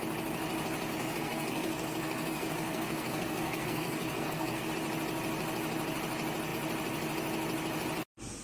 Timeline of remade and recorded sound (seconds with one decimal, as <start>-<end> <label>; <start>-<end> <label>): 0.0-0.9 recorded; 0.9-4.7 remade; 4.7-8.4 recorded

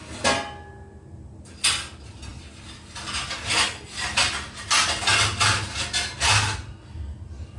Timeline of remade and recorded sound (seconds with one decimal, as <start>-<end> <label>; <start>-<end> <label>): 0.0-7.6 recorded

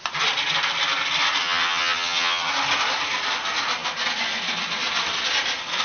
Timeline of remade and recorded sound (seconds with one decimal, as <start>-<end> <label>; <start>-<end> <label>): 0.0-1.4 recorded; 1.4-2.5 remade; 2.5-5.8 recorded